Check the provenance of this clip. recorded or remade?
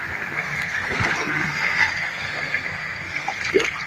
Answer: remade